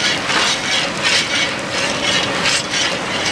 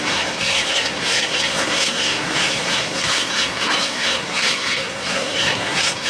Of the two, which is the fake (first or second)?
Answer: second